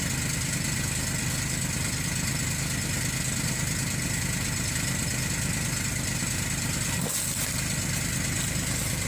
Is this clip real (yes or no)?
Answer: yes